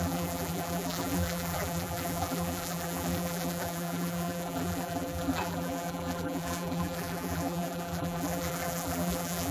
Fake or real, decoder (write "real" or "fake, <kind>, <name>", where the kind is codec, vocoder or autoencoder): fake, vocoder, BigVGAN v2